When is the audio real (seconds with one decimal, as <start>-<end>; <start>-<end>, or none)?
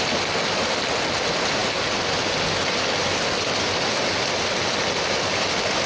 0.0-5.9